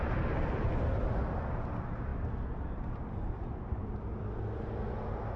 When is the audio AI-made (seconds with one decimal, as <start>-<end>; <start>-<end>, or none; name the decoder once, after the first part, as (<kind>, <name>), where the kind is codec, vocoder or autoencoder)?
none